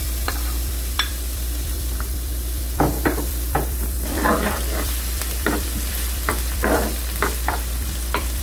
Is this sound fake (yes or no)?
yes